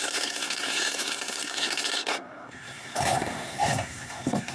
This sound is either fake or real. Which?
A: fake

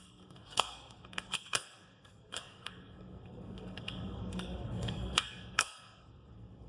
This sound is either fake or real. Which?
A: fake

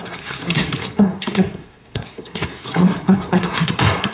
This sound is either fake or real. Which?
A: fake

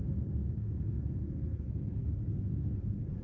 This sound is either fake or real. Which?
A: fake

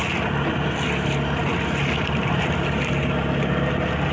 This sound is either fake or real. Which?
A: real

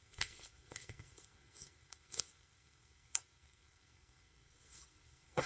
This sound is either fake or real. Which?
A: fake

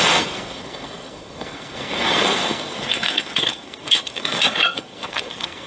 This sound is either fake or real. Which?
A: fake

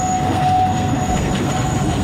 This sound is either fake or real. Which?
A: fake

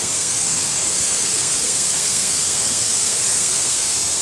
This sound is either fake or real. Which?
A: fake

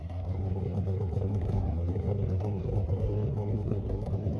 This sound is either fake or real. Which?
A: fake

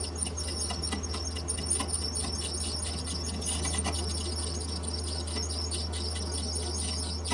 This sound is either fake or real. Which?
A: real